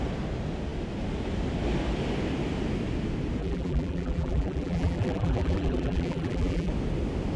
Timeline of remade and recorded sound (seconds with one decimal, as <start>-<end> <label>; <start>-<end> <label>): 0.0-3.4 recorded; 3.4-6.7 remade; 6.7-7.4 recorded